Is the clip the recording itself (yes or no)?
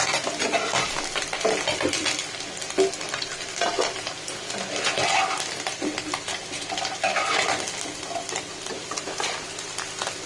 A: yes